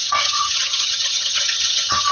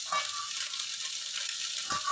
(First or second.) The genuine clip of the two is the second